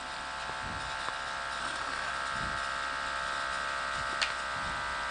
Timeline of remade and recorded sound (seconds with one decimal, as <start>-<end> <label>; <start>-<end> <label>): 0.0-1.6 recorded; 1.6-2.1 remade; 2.1-5.1 recorded